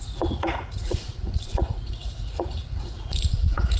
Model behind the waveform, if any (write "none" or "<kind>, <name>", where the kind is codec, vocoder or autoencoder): vocoder, Vocos